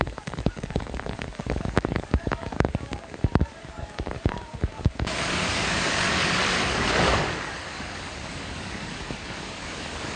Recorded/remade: remade